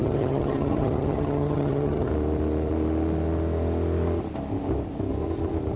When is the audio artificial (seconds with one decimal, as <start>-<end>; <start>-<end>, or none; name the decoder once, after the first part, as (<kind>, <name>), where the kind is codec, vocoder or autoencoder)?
0.0-2.1 (vocoder, HiFi-GAN)